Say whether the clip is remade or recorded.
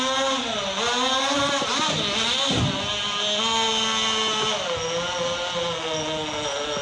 recorded